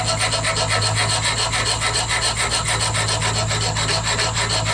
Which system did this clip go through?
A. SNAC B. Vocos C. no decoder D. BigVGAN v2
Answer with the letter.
C